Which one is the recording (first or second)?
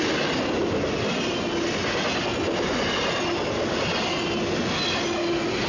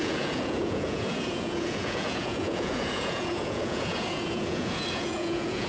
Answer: first